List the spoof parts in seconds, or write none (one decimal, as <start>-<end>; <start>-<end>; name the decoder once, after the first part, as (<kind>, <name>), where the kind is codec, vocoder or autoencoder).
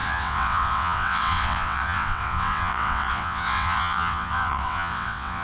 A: 0.0-5.4 (vocoder, WaveNeXt)